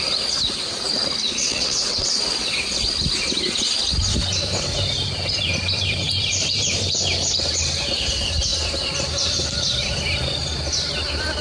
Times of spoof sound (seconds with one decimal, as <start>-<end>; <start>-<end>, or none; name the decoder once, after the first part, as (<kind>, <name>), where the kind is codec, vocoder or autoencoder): 1.4-2.1 (vocoder, WaveNeXt)